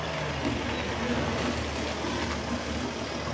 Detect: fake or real real